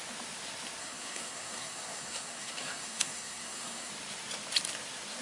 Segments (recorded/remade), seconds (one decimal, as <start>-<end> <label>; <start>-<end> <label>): 0.0-0.8 recorded; 0.8-3.9 remade; 3.9-5.2 recorded